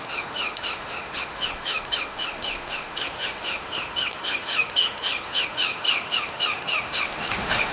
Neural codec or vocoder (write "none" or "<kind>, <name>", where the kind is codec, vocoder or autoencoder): autoencoder, DAC-VAE